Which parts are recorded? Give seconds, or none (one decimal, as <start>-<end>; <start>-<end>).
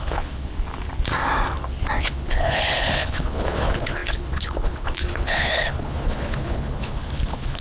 0.5-2.0